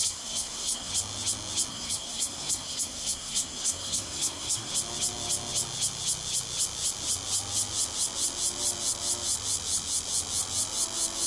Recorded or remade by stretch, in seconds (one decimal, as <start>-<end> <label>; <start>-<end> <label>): 0.0-0.9 remade; 0.9-1.7 recorded; 1.7-4.7 remade; 4.7-11.3 recorded